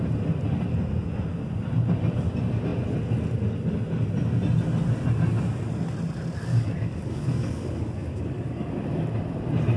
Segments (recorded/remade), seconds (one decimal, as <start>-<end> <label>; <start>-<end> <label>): 0.0-6.5 recorded; 6.5-8.7 remade; 8.7-9.8 recorded